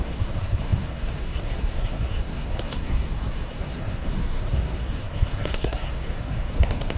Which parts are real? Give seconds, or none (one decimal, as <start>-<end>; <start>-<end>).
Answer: none